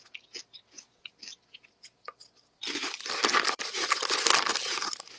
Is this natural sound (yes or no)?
yes